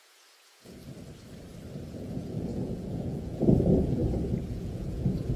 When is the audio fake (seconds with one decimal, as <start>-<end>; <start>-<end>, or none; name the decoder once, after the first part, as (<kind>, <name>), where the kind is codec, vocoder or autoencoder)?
0.0-0.8 (vocoder, Vocos); 1.9-4.0; 4.5-5.4